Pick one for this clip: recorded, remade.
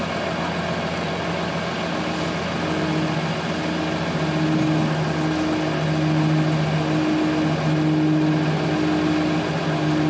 recorded